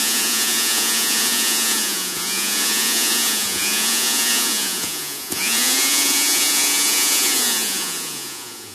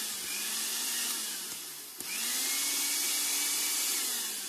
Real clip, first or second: second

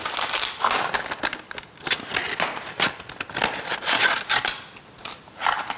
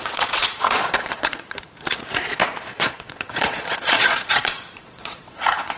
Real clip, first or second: first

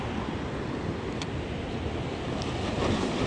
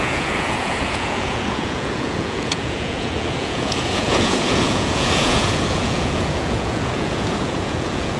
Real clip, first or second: first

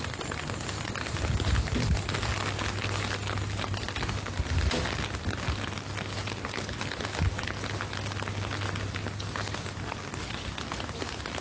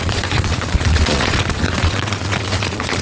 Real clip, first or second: first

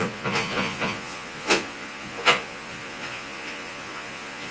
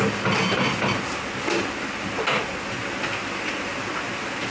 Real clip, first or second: second